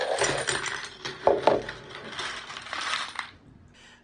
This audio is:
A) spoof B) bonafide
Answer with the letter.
B